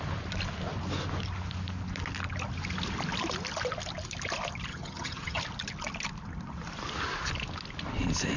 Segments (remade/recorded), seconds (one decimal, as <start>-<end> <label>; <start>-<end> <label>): 0.0-4.7 recorded; 4.7-5.4 remade; 5.4-8.4 recorded